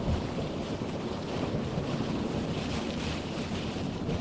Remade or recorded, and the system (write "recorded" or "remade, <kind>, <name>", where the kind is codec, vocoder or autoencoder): remade, vocoder, BigVGAN v2